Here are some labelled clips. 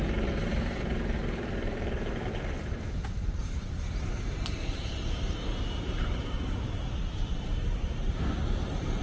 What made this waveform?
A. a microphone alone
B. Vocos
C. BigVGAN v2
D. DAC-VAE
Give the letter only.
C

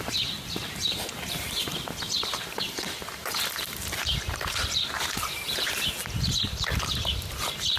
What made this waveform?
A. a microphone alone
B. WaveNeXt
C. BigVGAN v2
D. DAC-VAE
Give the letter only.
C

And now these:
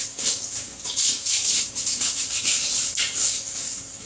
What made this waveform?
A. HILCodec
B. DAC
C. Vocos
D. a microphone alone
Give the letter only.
B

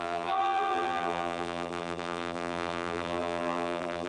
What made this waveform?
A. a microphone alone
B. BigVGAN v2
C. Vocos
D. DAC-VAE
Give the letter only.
B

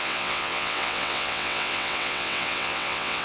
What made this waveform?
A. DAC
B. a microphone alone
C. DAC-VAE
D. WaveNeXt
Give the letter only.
D